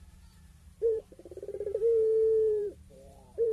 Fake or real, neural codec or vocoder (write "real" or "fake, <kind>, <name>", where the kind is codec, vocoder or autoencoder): fake, vocoder, BigVGAN v2